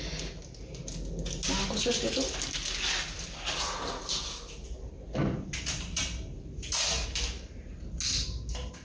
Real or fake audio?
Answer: real